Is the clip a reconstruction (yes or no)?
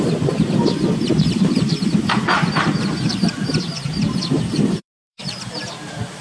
yes